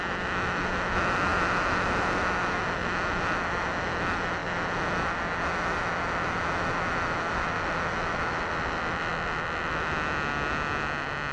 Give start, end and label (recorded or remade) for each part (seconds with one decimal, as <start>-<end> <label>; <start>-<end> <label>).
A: 0.0-11.3 recorded